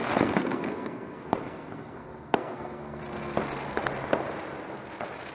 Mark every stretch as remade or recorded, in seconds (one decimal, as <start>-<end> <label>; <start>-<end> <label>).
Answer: 0.0-3.0 remade; 3.0-5.3 recorded